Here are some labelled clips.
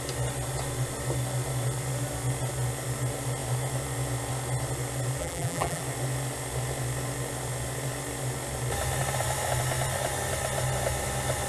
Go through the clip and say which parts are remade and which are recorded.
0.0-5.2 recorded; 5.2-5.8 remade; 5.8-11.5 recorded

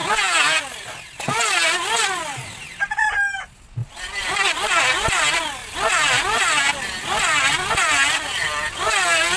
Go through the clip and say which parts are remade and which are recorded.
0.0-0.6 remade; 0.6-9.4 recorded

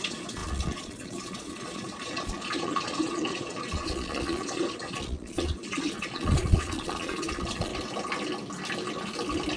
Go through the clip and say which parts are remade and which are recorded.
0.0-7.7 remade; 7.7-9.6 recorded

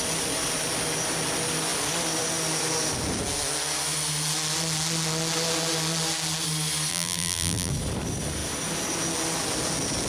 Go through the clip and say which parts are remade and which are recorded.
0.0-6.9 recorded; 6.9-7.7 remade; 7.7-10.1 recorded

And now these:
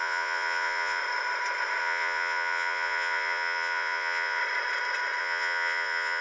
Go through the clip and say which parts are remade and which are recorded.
0.0-1.0 remade; 1.0-1.8 recorded; 1.8-4.4 remade; 4.4-5.2 recorded; 5.2-6.2 remade